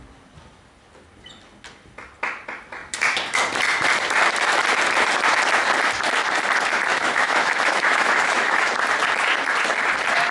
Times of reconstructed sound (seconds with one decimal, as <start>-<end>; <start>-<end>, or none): 6.9-8.7